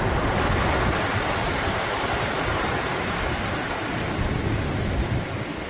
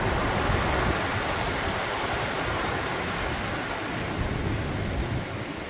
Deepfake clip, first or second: first